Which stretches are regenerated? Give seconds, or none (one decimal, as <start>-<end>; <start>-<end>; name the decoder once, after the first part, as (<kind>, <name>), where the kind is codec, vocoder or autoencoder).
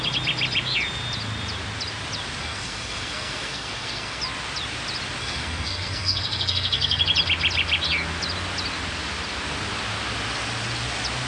2.4-4.2 (codec, SNAC); 5.2-7.0